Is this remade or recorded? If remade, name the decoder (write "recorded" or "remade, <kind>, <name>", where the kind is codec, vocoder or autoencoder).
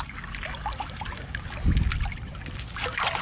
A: recorded